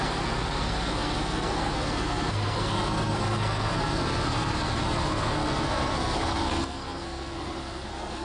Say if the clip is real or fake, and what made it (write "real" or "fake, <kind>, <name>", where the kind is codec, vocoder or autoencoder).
fake, codec, SNAC